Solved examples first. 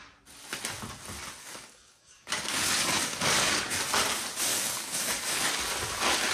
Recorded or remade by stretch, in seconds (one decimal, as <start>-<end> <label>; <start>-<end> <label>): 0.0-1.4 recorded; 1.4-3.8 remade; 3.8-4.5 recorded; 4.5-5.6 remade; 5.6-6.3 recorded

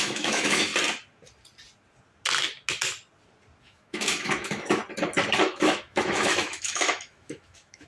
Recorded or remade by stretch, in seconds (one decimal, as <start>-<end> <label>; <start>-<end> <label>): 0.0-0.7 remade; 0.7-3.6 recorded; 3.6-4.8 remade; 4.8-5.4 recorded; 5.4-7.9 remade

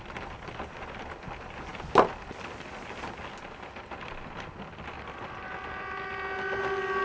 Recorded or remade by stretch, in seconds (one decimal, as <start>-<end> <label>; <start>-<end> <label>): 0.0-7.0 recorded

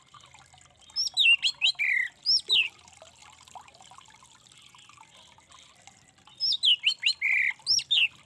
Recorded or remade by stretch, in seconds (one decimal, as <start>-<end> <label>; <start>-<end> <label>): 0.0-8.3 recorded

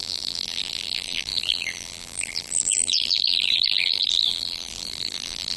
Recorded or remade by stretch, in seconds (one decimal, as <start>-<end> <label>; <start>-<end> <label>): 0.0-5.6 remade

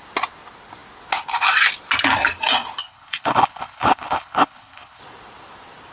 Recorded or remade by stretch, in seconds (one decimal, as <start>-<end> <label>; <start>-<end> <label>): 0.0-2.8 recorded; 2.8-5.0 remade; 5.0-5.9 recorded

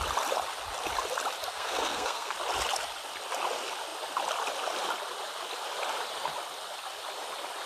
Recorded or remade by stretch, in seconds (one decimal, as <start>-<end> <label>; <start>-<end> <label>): 0.0-1.5 recorded; 1.5-2.3 remade; 2.3-7.7 recorded